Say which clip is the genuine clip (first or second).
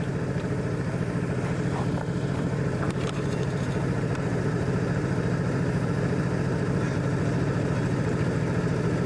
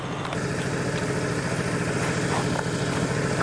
second